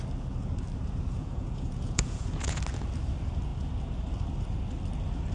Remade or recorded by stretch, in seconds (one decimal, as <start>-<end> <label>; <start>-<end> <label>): 0.0-1.1 recorded; 1.1-2.6 remade; 2.6-5.3 recorded